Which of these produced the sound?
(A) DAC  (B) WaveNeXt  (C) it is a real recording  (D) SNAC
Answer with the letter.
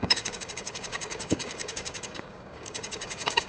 A